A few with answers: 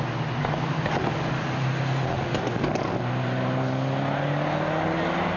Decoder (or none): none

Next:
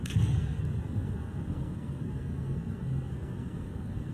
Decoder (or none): codec, SNAC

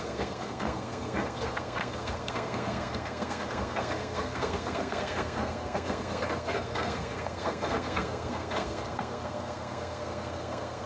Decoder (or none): codec, SNAC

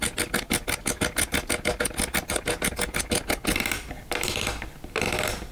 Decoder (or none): none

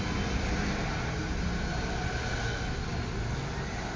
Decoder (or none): none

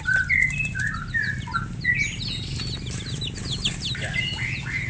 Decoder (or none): none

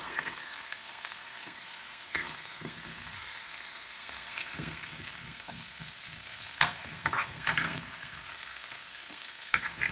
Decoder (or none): codec, SNAC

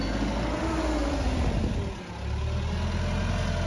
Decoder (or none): none